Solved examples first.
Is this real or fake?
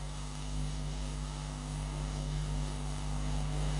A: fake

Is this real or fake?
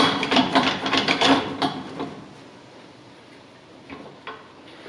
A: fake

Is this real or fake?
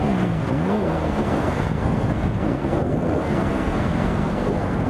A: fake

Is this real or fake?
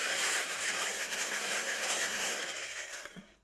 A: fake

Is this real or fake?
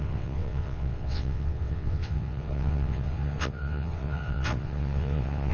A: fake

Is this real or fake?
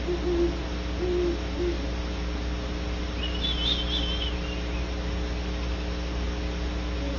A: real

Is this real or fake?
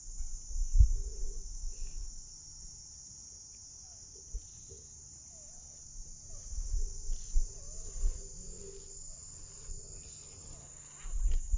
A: real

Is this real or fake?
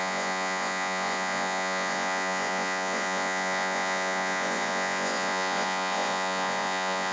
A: fake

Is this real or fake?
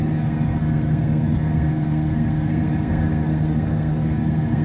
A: fake